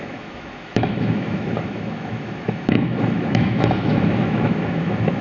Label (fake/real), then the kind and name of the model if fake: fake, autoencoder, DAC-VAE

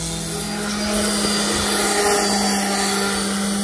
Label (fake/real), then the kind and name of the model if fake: real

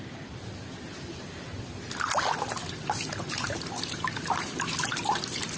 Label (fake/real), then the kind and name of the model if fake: real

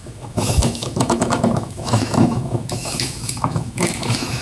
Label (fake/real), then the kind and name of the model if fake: fake, autoencoder, DAC-VAE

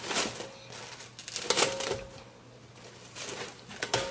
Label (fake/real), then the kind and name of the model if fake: real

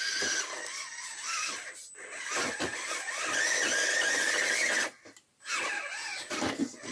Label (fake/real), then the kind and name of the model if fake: real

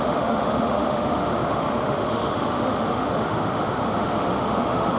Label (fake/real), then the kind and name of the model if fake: fake, autoencoder, DAC-VAE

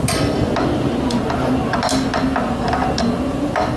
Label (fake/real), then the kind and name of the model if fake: real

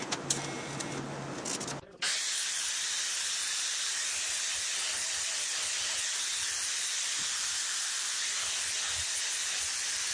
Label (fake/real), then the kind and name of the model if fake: real